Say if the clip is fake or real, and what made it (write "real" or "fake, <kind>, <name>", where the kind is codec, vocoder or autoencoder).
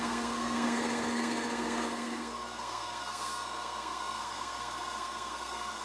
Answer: fake, codec, SNAC